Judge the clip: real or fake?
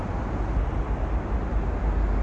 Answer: real